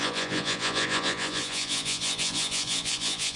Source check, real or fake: fake